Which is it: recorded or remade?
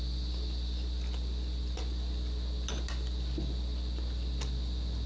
recorded